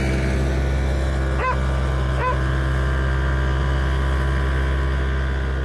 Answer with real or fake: real